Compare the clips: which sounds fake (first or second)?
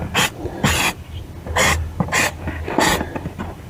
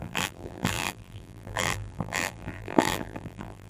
second